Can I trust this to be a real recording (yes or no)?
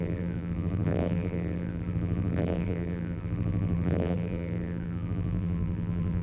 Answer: no